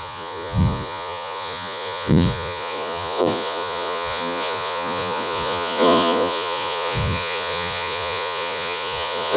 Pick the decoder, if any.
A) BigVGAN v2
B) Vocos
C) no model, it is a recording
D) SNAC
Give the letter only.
B